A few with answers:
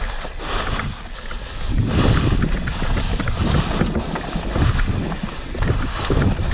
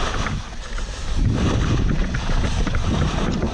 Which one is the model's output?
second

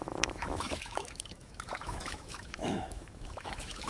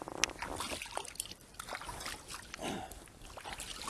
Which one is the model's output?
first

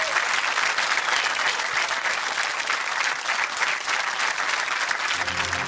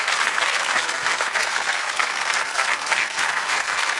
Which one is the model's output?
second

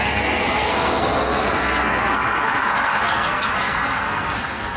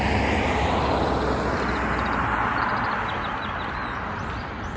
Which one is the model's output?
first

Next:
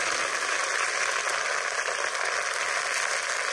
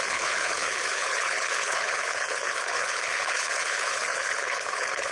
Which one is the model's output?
second